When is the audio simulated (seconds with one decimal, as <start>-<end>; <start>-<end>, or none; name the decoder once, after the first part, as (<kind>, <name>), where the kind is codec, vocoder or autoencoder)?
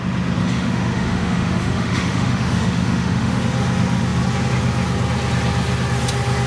0.4-3.4 (autoencoder, DAC-VAE)